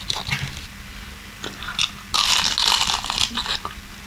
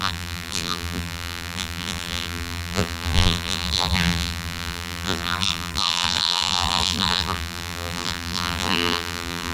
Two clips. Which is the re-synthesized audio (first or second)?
second